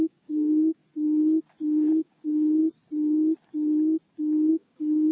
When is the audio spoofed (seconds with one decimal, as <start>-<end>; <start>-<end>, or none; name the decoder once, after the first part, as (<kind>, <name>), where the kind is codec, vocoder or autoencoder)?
0.0-0.8 (codec, DAC); 1.9-2.6; 4.5-5.1